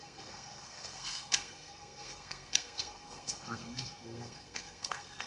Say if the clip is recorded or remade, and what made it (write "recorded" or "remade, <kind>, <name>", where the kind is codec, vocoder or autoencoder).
remade, codec, SNAC